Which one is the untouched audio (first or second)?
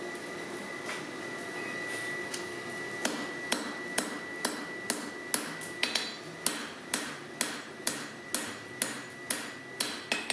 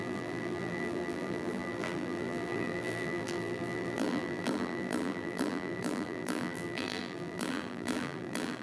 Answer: first